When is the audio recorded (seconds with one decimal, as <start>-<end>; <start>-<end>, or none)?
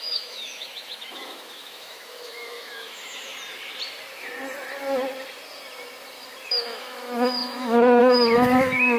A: 3.3-6.5